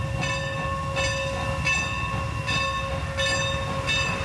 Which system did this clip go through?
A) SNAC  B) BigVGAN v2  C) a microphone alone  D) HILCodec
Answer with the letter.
C